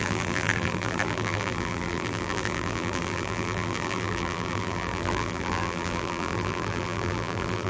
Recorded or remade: remade